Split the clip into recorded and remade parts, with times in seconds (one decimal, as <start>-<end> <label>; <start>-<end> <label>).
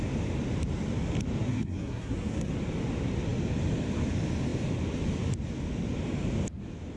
0.0-1.4 recorded; 1.4-2.5 remade; 2.5-7.0 recorded